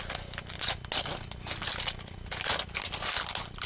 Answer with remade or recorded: recorded